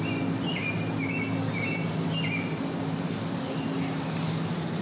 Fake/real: real